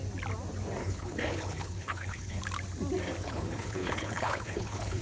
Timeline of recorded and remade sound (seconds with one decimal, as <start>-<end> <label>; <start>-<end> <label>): 0.0-0.8 recorded; 0.8-2.4 remade; 2.4-3.2 recorded; 3.2-5.0 remade